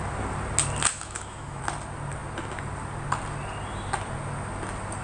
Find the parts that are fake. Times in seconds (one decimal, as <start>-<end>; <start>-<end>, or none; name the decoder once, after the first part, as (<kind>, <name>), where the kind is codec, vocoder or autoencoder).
0.9-1.6 (autoencoder, DAC-VAE)